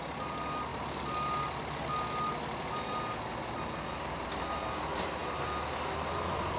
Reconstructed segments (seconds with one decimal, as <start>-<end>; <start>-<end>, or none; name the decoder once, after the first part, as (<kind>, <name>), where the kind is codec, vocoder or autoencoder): none